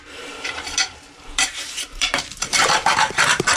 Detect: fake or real fake